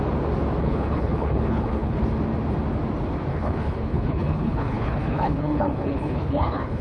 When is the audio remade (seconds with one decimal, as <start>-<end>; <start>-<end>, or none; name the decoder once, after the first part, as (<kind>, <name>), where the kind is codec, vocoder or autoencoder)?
0.6-2.0 (codec, HILCodec); 3.3-6.8